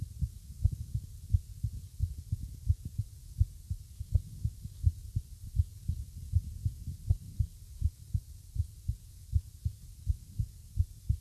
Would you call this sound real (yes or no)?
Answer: yes